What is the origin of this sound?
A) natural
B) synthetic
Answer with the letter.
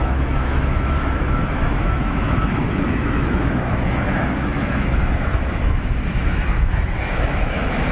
B